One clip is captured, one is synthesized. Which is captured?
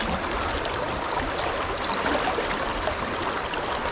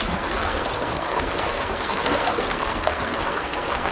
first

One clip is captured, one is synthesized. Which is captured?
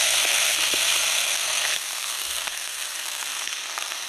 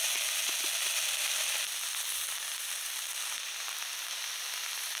second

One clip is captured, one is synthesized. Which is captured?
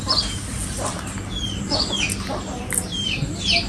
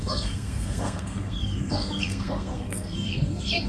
first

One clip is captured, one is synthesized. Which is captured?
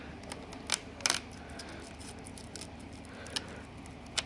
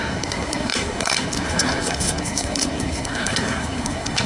first